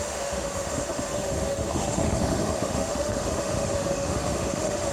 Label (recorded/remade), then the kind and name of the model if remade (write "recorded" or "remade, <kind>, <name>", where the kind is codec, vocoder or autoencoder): remade, autoencoder, DAC-VAE